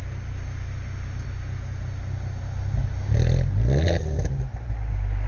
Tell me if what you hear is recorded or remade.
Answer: recorded